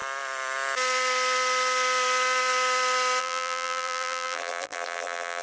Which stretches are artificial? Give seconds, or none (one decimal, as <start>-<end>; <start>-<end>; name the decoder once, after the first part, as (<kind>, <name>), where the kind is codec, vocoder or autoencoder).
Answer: 3.2-5.4 (vocoder, BigVGAN v2)